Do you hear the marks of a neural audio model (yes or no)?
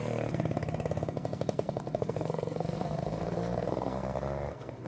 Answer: yes